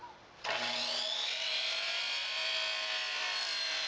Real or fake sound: real